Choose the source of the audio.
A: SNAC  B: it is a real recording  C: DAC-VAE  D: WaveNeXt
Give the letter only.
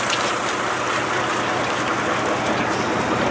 B